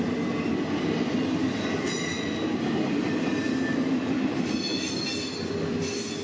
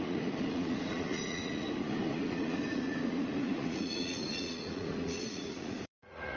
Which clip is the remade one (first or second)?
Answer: second